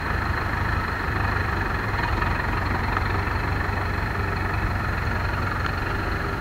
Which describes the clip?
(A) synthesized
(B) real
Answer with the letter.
B